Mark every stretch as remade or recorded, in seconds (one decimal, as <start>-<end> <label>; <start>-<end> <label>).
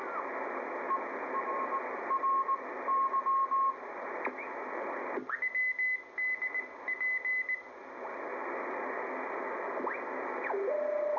0.0-11.2 recorded